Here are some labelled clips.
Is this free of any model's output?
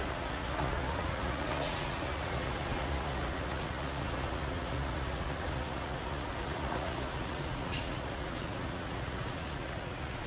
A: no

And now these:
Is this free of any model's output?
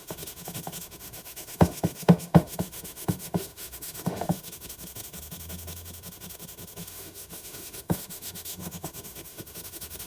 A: no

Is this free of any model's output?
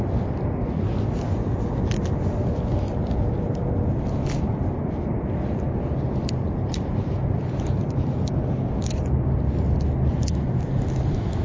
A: yes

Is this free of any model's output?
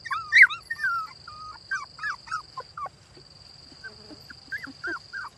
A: yes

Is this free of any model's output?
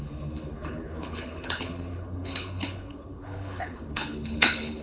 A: no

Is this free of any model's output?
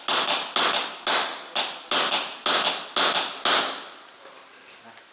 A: yes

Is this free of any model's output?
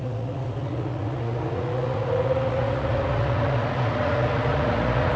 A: no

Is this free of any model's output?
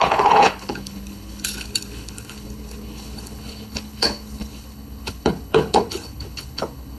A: no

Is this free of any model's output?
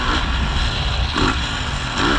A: yes